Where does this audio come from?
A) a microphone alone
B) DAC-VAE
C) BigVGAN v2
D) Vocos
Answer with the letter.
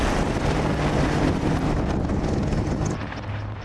A